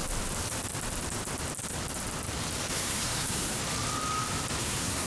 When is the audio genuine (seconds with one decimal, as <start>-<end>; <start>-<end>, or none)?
0.0-2.7; 3.6-4.6